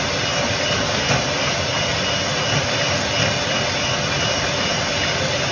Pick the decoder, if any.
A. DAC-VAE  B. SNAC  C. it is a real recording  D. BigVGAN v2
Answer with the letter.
C